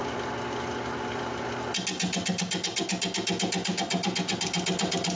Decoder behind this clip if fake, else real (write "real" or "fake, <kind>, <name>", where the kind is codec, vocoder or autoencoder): real